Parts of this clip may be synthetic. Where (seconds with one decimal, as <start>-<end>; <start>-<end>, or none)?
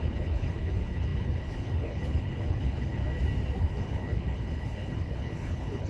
0.0-3.0; 3.6-5.9